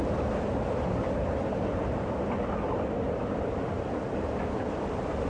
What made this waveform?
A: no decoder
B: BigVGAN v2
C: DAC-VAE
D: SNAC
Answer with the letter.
A